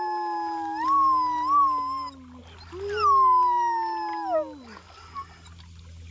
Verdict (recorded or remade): recorded